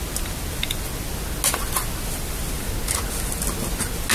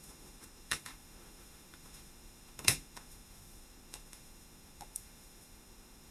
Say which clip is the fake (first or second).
second